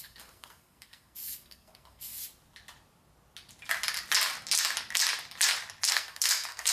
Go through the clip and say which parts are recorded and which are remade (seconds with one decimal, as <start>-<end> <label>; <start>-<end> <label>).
0.0-2.2 remade; 2.2-5.9 recorded; 5.9-6.7 remade